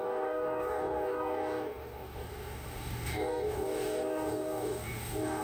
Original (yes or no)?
no